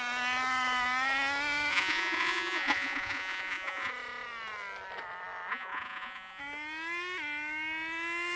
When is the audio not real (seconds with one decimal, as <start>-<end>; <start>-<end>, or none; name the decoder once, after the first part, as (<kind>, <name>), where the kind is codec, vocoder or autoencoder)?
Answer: 1.7-3.9 (vocoder, Vocos); 5.5-6.4